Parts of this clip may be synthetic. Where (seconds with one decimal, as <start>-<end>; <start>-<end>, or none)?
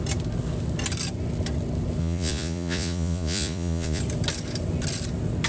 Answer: 2.0-4.0